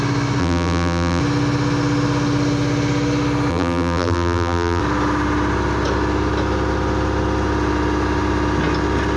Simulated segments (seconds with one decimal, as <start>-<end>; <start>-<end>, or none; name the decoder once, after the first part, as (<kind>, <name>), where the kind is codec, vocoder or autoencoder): 0.4-1.2 (vocoder, BigVGAN v2); 3.5-4.8